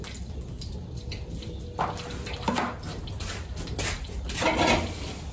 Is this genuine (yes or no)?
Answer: yes